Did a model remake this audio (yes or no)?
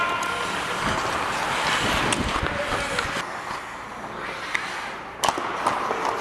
no